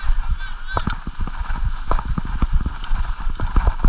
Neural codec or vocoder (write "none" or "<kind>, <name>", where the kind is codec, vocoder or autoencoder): none